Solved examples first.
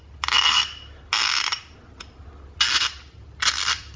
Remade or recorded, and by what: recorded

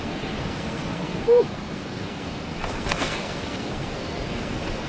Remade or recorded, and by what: remade, codec, SNAC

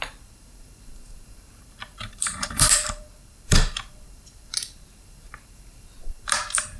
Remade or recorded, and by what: remade, vocoder, BigVGAN v2